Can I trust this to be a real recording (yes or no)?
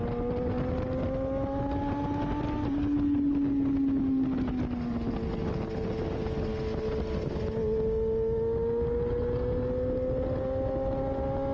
yes